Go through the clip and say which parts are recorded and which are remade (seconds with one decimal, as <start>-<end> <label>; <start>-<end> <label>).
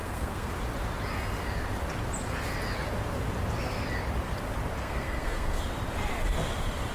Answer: 0.0-0.5 remade; 0.5-4.8 recorded; 4.8-5.6 remade; 5.6-6.9 recorded